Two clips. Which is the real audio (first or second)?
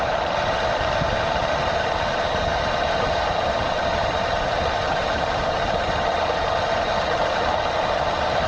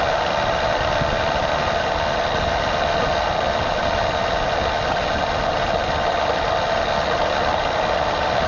second